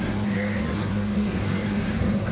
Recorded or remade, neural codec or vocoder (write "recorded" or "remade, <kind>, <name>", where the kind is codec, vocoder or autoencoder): remade, codec, SNAC